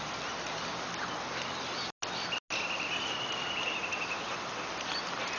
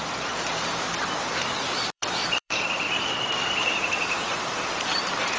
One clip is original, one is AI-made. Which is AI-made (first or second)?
second